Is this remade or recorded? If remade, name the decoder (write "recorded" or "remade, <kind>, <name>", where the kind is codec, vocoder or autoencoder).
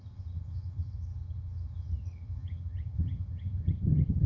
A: remade, vocoder, HiFi-GAN